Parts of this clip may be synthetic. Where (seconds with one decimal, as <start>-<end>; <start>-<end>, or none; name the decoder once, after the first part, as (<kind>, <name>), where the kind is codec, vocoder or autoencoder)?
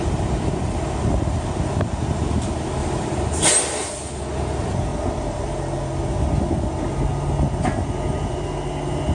2.8-3.5 (vocoder, BigVGAN v2)